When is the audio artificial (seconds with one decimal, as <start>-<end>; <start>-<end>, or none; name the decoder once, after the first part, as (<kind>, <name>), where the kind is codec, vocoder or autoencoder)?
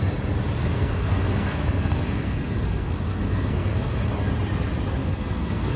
0.6-4.1 (codec, SNAC); 5.0-5.8